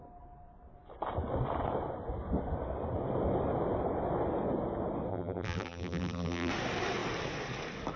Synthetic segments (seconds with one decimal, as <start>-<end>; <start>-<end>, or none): 5.1-6.5